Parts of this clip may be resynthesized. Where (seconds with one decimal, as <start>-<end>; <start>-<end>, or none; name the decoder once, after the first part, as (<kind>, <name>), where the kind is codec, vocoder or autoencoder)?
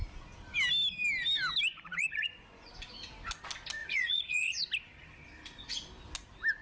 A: 1.7-2.7 (vocoder, Vocos); 3.8-4.6